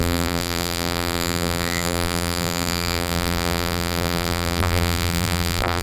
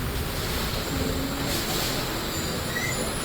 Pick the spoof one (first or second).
first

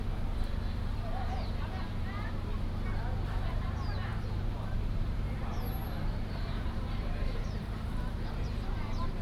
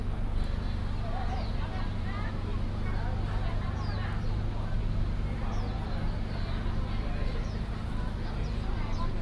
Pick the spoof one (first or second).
first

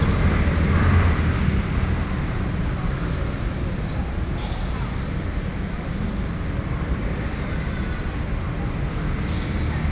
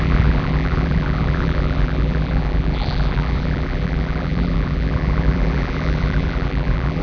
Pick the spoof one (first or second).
second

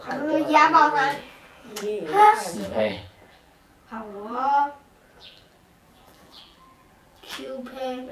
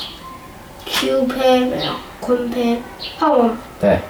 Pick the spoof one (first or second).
first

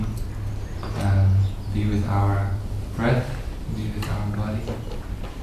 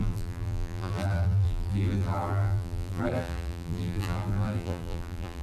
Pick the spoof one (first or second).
second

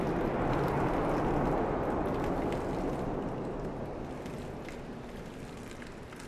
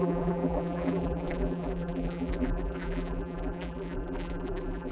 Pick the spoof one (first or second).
second